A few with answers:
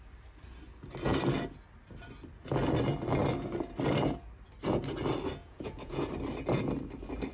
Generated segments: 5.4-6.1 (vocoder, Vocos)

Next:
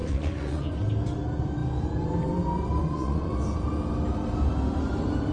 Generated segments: 0.0-0.7 (vocoder, Vocos); 2.8-3.3